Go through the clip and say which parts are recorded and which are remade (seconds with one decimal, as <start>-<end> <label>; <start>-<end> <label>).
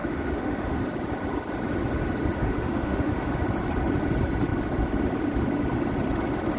0.0-0.8 remade; 0.8-2.4 recorded; 2.4-3.3 remade; 3.3-6.6 recorded